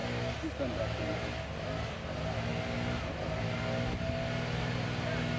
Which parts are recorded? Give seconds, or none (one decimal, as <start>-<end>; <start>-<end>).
0.0-5.4